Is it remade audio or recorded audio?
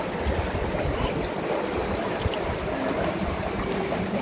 recorded